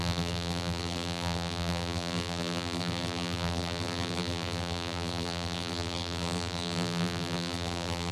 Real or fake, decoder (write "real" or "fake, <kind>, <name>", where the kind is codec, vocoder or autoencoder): fake, vocoder, BigVGAN v2